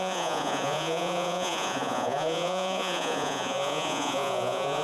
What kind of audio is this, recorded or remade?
remade